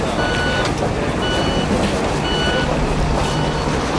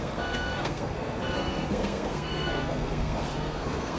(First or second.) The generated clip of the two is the second